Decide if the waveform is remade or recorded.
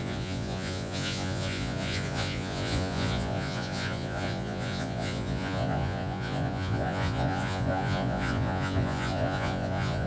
remade